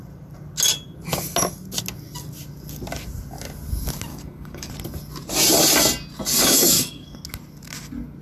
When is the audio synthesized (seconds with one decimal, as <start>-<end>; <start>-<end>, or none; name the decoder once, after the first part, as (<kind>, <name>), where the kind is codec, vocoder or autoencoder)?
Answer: 4.1-4.7 (codec, DAC); 6.4-7.2

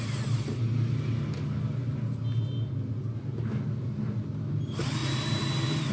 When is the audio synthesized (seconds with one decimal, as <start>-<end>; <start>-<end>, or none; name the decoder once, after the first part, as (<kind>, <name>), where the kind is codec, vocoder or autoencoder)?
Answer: none

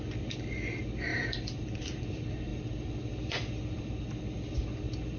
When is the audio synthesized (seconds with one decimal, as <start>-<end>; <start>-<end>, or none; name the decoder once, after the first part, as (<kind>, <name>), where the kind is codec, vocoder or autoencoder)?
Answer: 1.1-2.0 (vocoder, BigVGAN v2); 2.5-4.6

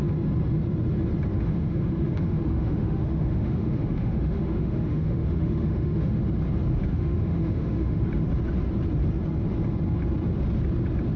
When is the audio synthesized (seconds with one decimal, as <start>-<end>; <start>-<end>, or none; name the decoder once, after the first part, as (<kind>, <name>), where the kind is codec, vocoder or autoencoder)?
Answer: 1.3-6.2 (autoencoder, DAC-VAE); 6.9-8.0

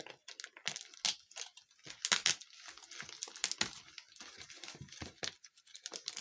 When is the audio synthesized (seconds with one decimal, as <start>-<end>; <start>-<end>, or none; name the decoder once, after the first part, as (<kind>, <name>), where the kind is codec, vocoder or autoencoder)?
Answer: none